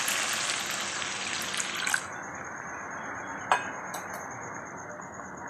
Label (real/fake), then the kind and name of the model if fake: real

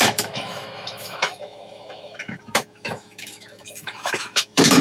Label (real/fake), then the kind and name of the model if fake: fake, autoencoder, DAC-VAE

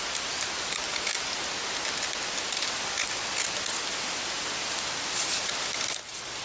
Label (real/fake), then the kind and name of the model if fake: real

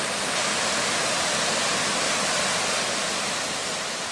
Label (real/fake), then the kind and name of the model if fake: real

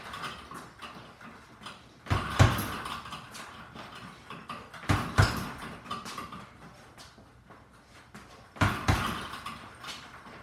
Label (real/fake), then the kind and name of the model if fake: real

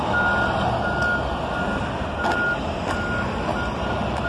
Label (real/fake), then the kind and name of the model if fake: real